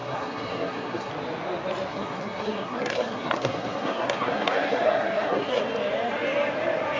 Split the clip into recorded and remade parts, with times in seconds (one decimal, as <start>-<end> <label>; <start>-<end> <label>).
0.0-1.1 remade; 1.1-1.9 recorded; 1.9-5.6 remade; 5.6-7.0 recorded